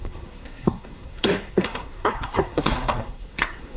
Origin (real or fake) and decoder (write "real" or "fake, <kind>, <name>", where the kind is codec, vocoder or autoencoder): fake, codec, SNAC